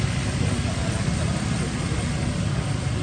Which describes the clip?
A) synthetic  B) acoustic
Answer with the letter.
B